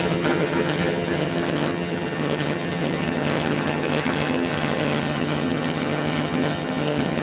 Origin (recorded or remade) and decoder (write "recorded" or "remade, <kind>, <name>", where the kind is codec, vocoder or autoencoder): remade, vocoder, HiFi-GAN